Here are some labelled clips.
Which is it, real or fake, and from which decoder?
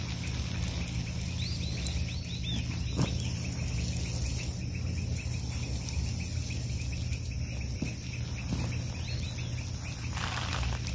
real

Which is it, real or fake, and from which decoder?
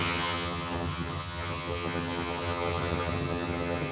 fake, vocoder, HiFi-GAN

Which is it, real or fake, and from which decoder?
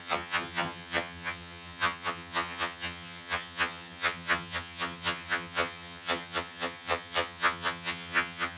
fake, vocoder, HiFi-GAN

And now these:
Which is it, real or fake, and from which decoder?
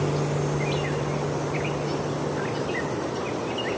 real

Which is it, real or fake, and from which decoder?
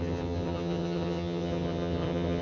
fake, vocoder, HiFi-GAN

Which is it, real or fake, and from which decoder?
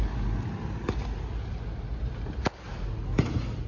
real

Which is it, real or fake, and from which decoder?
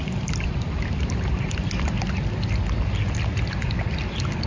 real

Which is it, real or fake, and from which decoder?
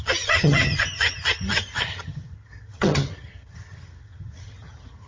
fake, vocoder, HiFi-GAN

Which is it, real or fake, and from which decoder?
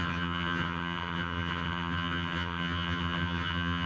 fake, vocoder, HiFi-GAN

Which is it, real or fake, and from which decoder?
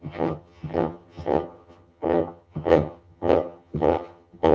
fake, vocoder, HiFi-GAN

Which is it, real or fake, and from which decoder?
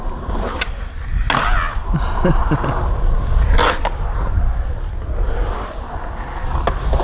real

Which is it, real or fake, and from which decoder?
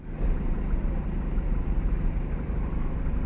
real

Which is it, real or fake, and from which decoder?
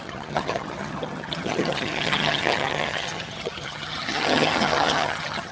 fake, vocoder, HiFi-GAN